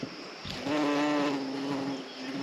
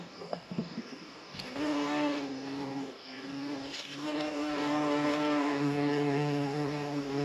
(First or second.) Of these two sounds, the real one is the first